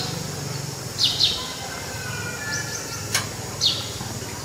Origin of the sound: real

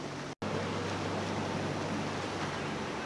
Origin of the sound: real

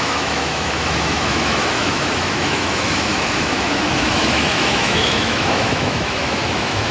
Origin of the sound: fake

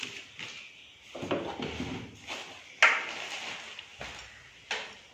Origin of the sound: real